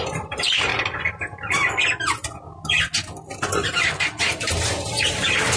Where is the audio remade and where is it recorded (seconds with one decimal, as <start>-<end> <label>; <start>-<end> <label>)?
0.0-0.7 remade; 0.7-3.5 recorded; 3.5-5.6 remade

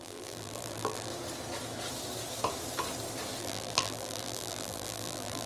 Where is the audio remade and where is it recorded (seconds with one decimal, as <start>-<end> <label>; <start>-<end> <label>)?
0.0-1.1 remade; 1.1-3.4 recorded; 3.4-5.5 remade

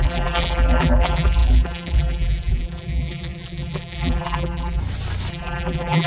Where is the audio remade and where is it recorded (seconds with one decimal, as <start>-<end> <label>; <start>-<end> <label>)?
0.0-4.8 remade; 4.8-5.3 recorded; 5.3-6.1 remade

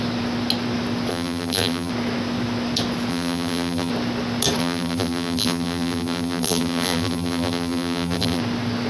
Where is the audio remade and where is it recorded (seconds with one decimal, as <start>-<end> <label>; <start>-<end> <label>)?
0.0-1.1 recorded; 1.1-1.9 remade; 1.9-3.1 recorded; 3.1-3.9 remade; 3.9-4.6 recorded; 4.6-8.4 remade; 8.4-8.9 recorded

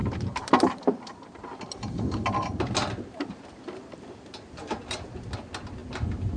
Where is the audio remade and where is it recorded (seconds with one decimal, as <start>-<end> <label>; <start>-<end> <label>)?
0.0-5.8 recorded; 5.8-6.4 remade

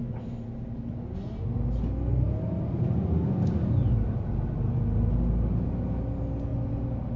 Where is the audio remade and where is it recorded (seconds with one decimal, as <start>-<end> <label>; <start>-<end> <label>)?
0.0-7.2 recorded

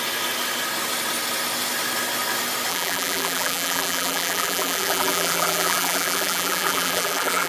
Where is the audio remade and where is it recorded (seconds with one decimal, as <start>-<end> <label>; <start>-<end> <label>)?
0.0-2.7 recorded; 2.7-7.5 remade